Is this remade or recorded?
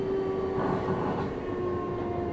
recorded